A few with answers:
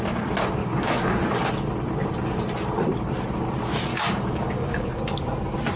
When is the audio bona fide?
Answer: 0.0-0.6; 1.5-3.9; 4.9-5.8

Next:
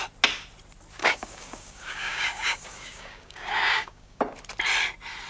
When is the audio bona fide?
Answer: 0.0-1.0; 4.2-5.3

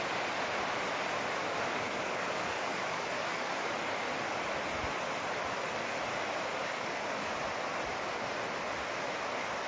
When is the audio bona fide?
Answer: 0.0-1.4; 3.7-6.6; 7.3-9.7